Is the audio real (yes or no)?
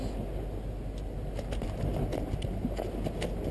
yes